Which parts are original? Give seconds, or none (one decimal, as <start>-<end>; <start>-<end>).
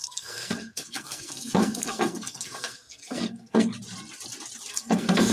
3.7-4.7